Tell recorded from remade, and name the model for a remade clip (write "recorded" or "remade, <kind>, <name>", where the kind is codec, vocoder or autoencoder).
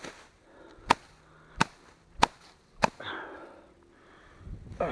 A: recorded